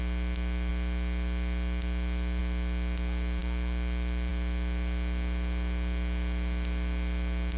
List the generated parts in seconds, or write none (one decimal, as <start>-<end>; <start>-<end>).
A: none